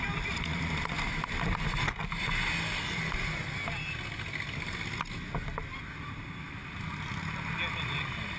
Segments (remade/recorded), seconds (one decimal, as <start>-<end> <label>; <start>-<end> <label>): 0.0-8.4 recorded